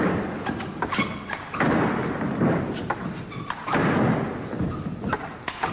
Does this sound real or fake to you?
real